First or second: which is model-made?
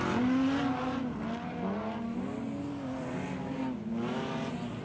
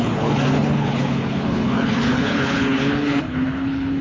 second